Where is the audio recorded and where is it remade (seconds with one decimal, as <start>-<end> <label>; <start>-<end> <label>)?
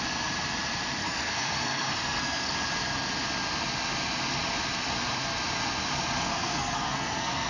0.0-1.0 recorded; 1.0-2.5 remade; 2.5-6.3 recorded; 6.3-7.5 remade